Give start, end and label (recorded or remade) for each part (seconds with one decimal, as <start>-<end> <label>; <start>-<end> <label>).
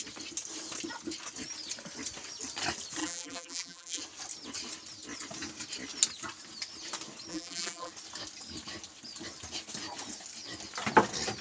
0.0-3.0 recorded; 3.0-4.0 remade; 4.0-7.3 recorded; 7.3-7.9 remade; 7.9-11.4 recorded